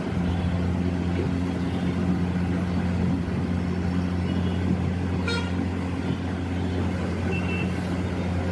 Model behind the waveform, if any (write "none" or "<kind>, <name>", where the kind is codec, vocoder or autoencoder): none